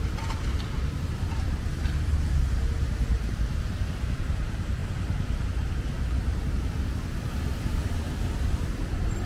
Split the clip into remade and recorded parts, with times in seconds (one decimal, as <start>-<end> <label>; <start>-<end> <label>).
0.0-4.8 remade; 4.8-6.1 recorded; 6.1-9.3 remade